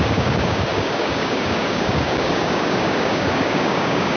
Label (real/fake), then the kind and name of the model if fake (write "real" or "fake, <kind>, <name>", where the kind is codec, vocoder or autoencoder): fake, codec, DAC